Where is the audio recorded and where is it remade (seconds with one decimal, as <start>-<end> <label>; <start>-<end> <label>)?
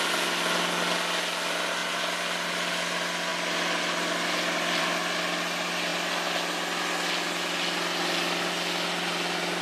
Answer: 0.0-9.6 recorded